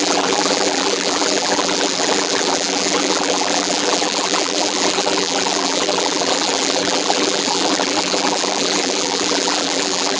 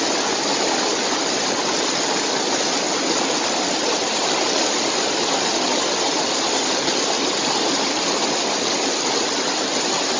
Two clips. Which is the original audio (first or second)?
second